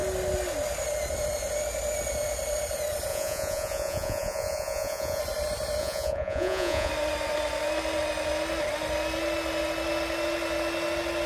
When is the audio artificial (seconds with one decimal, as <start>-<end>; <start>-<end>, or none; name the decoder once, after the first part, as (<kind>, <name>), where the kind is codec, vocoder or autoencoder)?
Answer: 3.1-5.2 (vocoder, Vocos); 5.8-6.9